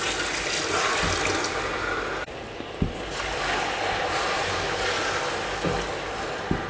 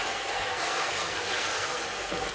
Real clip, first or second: first